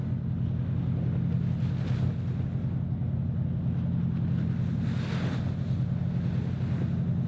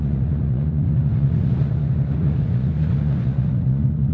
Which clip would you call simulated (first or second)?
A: second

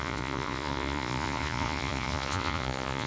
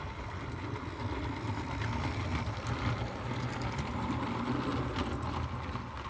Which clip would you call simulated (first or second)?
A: first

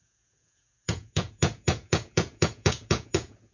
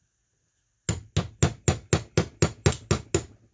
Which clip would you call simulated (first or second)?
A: first